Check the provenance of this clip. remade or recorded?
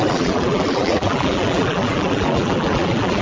remade